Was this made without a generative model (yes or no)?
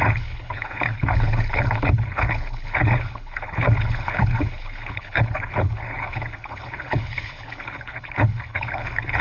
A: no